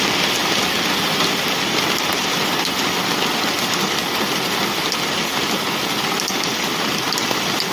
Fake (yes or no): no